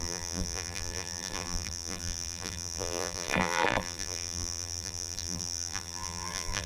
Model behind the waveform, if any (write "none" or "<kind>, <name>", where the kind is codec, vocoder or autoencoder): vocoder, BigVGAN v2